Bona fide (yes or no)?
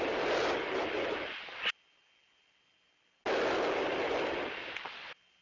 yes